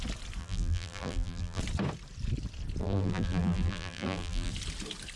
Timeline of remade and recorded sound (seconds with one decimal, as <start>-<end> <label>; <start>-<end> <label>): 0.0-0.4 recorded; 0.4-1.6 remade; 1.6-2.8 recorded; 2.8-4.5 remade; 4.5-5.2 recorded